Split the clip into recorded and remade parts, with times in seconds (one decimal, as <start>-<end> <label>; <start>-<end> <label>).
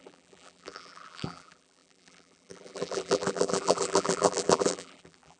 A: 0.0-5.4 remade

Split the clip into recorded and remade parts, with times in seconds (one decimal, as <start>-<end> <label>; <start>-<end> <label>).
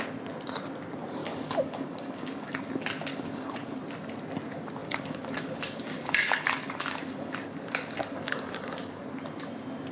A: 0.0-1.2 recorded; 1.2-2.5 remade; 2.5-3.1 recorded; 3.1-3.8 remade; 3.8-4.8 recorded; 4.8-9.0 remade; 9.0-9.9 recorded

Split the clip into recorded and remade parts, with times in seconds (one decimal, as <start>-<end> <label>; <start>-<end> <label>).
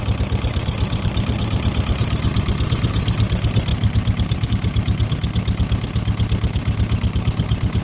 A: 0.0-7.8 recorded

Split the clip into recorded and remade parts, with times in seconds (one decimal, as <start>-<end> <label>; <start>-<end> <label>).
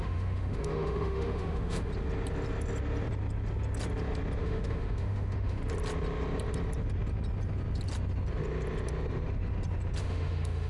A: 0.0-1.9 remade; 1.9-4.4 recorded; 4.4-5.6 remade; 5.6-10.0 recorded; 10.0-10.7 remade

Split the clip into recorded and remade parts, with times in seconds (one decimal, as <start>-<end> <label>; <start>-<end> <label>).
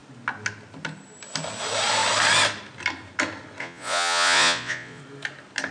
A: 0.0-3.6 recorded; 3.6-5.0 remade; 5.0-5.7 recorded